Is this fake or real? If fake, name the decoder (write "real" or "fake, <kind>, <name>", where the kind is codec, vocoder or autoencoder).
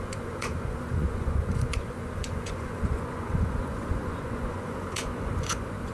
fake, vocoder, Vocos